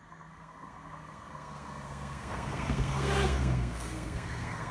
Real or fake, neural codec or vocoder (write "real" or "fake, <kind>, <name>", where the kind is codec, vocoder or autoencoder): fake, codec, SNAC